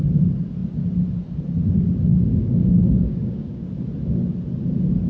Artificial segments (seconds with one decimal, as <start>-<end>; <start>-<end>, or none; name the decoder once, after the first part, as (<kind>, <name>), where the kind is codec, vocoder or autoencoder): 2.1-3.7 (codec, DAC)